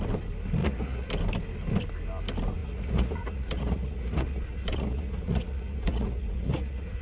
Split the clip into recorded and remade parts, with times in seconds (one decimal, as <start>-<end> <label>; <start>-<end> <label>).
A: 0.0-0.6 recorded; 0.6-1.1 remade; 1.1-2.6 recorded; 2.6-7.0 remade